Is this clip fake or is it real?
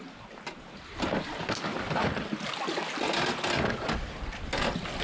real